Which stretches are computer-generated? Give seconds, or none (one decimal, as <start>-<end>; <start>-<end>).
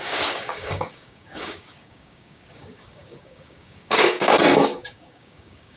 0.0-5.8